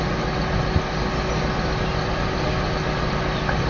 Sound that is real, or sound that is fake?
real